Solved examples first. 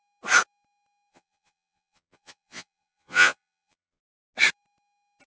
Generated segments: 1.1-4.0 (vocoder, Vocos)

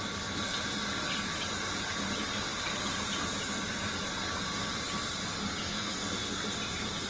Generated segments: 5.6-6.1 (codec, SNAC)

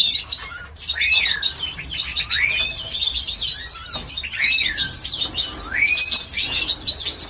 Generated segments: 2.1-2.6 (vocoder, Vocos)

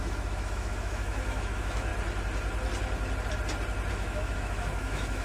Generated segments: 0.0-1.9 (autoencoder, DAC-VAE); 3.9-5.2